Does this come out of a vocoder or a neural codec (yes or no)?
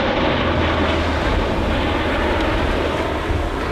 no